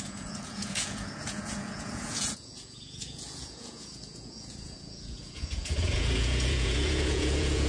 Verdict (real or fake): fake